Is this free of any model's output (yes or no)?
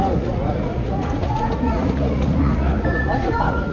no